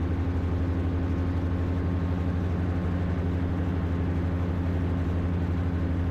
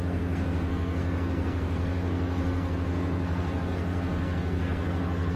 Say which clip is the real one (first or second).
first